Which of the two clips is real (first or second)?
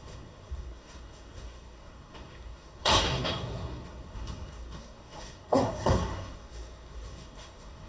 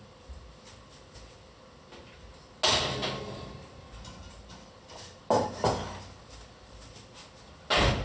second